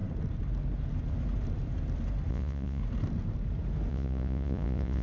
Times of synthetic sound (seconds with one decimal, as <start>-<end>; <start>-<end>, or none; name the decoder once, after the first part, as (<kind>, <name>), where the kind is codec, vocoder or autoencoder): 2.3-2.8 (vocoder, Vocos); 3.9-5.0